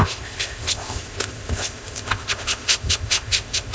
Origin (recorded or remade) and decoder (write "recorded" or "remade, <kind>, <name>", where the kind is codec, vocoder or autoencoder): remade, codec, ZipCodec